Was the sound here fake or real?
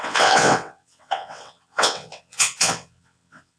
fake